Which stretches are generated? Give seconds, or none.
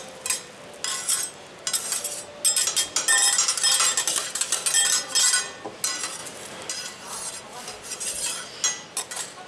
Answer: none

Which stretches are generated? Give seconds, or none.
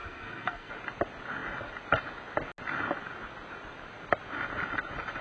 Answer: 0.0-0.7 (codec, SNAC)